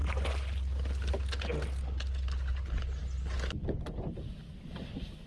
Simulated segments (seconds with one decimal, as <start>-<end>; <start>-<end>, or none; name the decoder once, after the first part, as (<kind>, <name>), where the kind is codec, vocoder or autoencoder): none